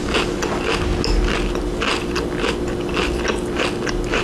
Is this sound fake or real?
real